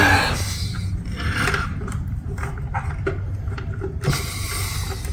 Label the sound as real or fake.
real